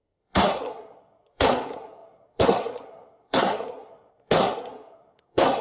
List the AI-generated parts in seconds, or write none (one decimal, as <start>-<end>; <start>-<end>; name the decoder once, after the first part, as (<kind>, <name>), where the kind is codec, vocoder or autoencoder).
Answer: 0.0-5.6 (codec, SNAC)